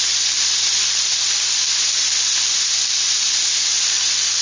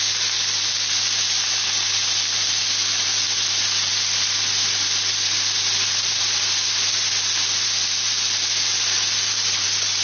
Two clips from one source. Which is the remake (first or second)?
first